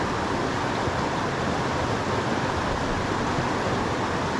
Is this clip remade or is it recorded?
recorded